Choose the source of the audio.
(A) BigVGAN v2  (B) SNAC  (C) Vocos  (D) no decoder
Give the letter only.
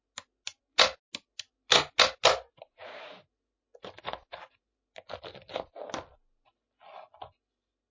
D